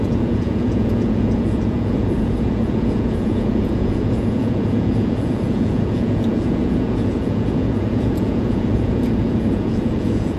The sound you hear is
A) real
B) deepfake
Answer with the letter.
B